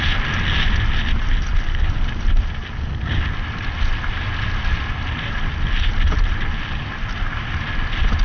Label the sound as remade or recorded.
recorded